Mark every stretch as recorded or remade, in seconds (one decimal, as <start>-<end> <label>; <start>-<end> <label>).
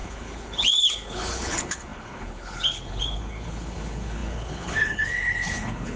0.0-6.0 remade